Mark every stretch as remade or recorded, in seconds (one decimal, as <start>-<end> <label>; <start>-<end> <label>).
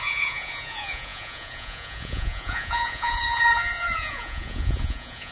0.0-5.3 remade